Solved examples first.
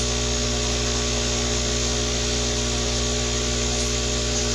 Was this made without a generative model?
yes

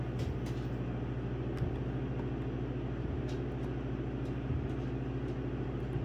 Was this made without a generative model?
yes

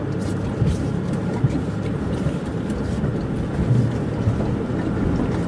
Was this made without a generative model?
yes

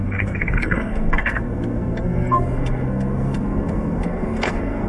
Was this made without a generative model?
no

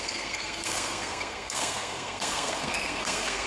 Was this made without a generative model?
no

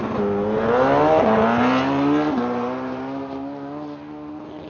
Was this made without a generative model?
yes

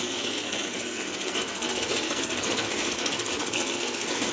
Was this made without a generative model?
no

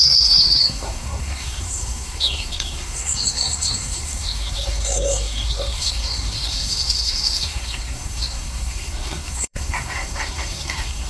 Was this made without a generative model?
no